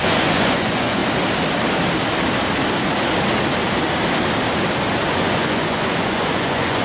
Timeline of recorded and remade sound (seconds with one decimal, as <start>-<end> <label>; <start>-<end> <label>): 0.0-1.0 remade; 1.0-5.1 recorded; 5.1-6.8 remade